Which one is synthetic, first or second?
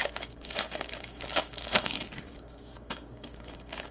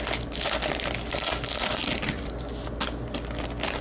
first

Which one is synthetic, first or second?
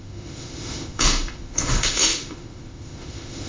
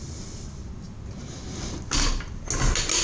first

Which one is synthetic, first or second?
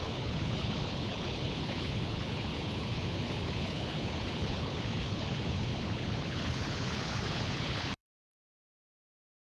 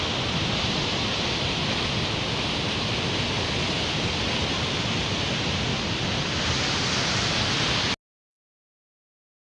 first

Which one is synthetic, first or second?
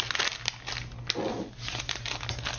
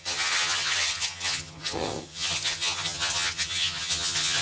second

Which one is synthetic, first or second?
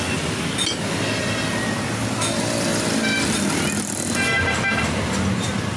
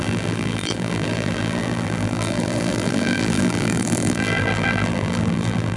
second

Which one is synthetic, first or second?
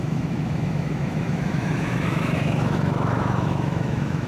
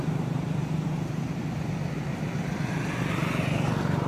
first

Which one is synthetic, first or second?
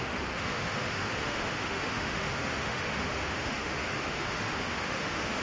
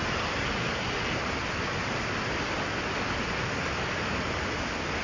first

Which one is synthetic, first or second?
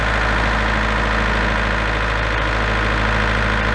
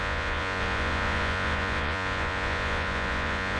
second